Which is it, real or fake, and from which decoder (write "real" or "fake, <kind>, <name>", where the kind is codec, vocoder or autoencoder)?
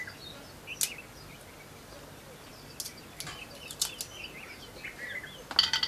real